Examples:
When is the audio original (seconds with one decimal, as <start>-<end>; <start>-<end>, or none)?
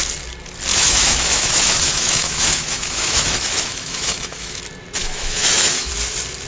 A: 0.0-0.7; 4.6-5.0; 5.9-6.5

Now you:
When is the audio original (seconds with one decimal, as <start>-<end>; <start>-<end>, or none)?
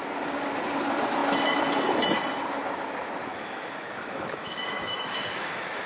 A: 0.0-3.3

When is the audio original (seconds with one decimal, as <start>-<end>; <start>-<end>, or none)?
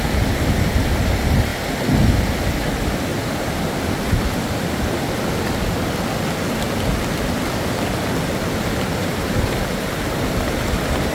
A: 0.0-3.1; 3.7-9.0